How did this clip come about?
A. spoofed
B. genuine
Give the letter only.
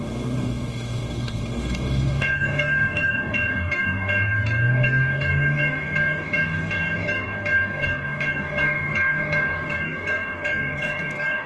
A